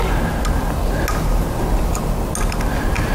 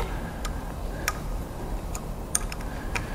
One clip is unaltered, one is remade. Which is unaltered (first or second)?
first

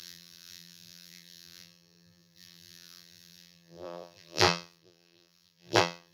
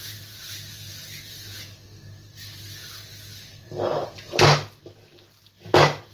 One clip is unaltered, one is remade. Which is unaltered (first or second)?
second